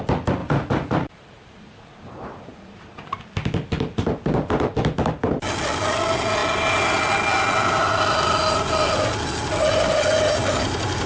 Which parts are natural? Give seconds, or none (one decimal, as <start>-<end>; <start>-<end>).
0.0-0.4; 3.2-11.1